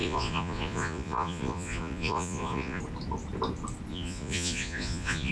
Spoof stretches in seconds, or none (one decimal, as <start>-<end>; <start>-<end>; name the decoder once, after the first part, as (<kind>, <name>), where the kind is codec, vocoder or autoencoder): 0.0-2.8 (vocoder, Vocos); 3.9-5.3